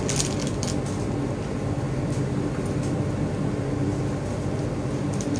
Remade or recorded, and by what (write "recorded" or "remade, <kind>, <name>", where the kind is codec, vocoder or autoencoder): recorded